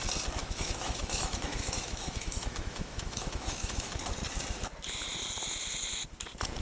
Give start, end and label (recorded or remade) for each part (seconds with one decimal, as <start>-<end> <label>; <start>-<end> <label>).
0.0-0.4 recorded; 0.4-3.9 remade; 3.9-6.6 recorded